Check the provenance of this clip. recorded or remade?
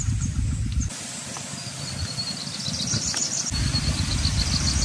recorded